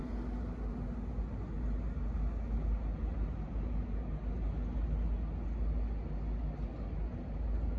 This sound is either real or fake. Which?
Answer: real